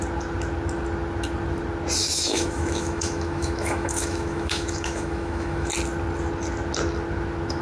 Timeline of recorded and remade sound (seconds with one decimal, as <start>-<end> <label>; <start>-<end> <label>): 0.0-2.0 recorded; 2.0-5.7 remade; 5.7-7.6 recorded